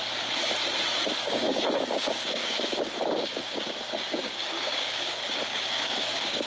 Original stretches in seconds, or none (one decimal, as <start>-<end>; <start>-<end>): 0.0-1.2; 5.1-5.5